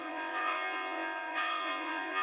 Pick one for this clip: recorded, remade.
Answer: remade